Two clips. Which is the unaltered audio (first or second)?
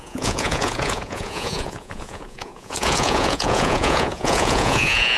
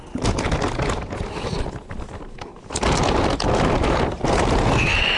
second